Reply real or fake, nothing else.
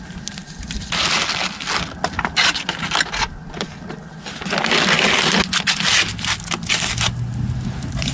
real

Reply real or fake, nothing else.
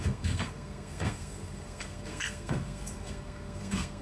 fake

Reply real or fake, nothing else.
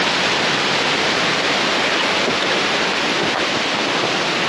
real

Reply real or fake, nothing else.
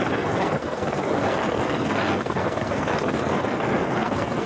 fake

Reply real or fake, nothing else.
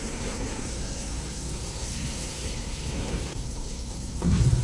fake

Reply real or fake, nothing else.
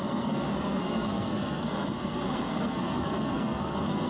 fake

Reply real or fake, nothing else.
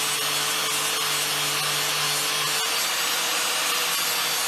real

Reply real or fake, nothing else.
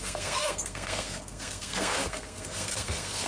fake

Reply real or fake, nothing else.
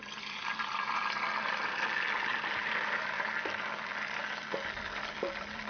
real